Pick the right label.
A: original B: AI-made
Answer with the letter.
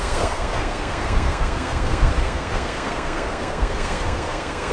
B